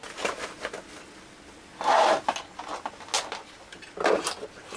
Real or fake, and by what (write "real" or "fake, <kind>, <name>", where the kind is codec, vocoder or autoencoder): real